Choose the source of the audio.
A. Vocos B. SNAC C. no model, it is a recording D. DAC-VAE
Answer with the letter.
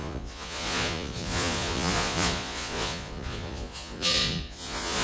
A